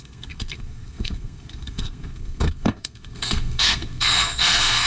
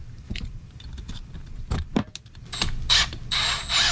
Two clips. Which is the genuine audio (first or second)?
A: second